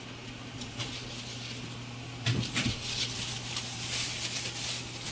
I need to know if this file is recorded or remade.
remade